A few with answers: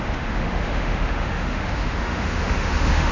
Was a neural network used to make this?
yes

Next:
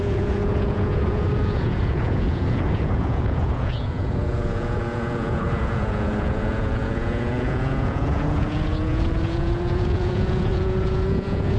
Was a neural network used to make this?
yes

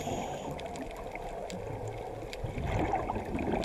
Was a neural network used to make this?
no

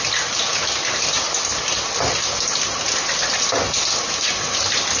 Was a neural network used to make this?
no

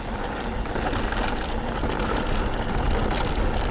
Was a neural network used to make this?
no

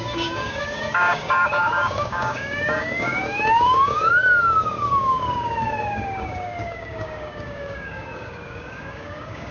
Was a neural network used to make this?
yes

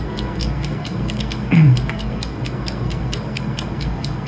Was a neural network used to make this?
yes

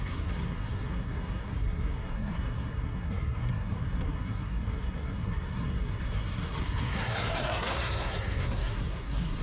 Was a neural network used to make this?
yes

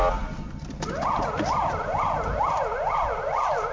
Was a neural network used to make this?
no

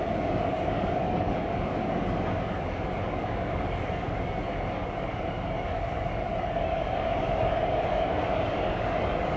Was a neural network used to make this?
yes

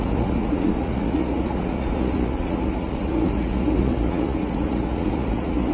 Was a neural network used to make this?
yes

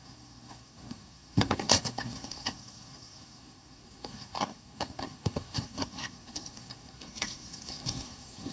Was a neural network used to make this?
yes